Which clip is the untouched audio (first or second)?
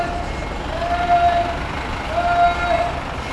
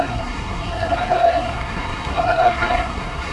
first